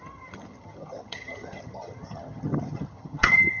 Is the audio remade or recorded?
remade